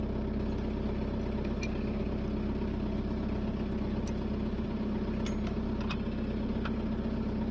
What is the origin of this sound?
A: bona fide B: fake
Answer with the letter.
A